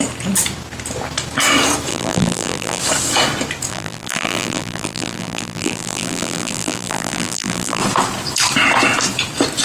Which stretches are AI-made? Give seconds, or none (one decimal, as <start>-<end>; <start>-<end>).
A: 1.9-2.8; 3.7-7.8